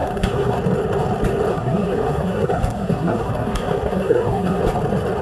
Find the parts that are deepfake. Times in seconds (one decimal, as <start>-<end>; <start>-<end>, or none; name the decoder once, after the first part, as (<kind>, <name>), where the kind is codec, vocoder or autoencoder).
0.0-0.6 (codec, SNAC); 1.5-4.6